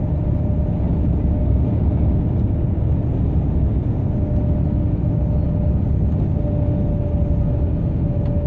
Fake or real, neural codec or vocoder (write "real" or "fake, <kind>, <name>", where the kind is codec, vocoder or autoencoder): real